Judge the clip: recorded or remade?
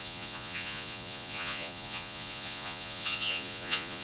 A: remade